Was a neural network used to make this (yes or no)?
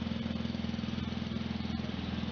no